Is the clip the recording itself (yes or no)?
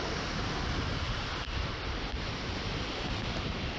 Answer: no